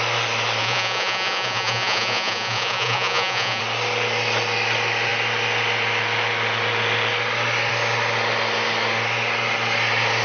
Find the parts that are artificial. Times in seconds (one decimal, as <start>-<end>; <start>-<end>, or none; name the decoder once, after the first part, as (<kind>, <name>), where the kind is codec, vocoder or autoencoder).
0.6-3.6 (vocoder, Vocos)